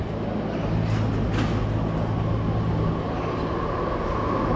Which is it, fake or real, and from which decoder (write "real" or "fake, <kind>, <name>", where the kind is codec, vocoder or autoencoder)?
real